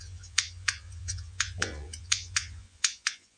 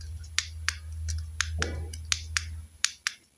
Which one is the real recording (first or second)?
second